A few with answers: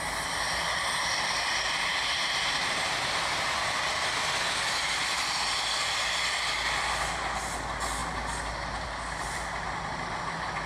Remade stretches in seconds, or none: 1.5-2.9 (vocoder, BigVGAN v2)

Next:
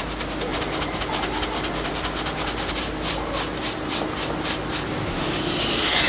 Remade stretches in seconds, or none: 0.5-1.0 (vocoder, BigVGAN v2)